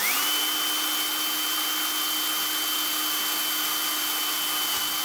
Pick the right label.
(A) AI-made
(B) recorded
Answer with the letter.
B